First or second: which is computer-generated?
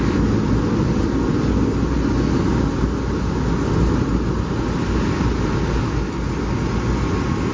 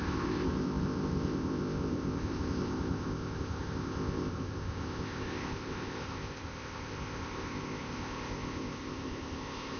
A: second